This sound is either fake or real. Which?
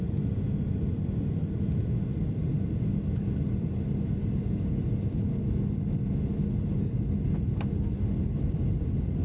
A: real